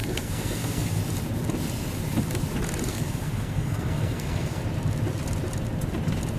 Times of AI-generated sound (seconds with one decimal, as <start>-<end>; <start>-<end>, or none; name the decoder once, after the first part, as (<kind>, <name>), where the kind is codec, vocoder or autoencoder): 0.0-1.0 (codec, SNAC); 2.9-4.6